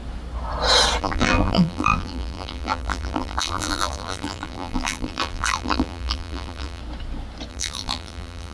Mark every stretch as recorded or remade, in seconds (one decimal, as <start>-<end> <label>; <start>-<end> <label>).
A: 0.0-1.0 recorded; 1.0-6.8 remade; 6.8-7.5 recorded; 7.5-8.5 remade